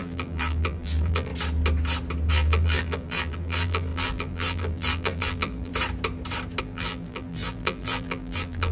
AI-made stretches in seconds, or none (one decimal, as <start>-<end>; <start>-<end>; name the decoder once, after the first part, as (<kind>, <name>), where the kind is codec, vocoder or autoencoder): 0.0-1.3 (vocoder, BigVGAN v2); 2.3-5.7; 6.6-8.7